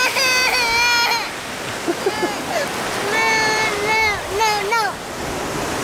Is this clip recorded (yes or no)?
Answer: yes